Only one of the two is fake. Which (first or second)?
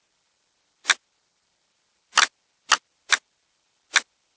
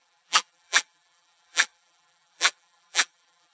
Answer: second